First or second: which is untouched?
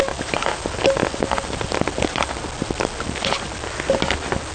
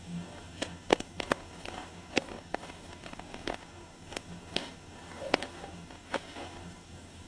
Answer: first